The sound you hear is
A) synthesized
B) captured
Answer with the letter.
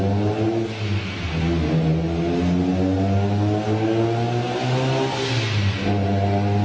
B